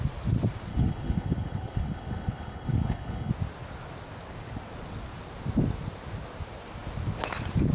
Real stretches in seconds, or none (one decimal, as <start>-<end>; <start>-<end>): 0.0-0.7; 3.3-7.7